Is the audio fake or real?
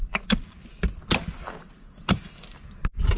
real